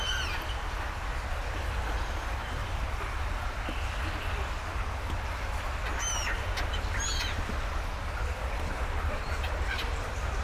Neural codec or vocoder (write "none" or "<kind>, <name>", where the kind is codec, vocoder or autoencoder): none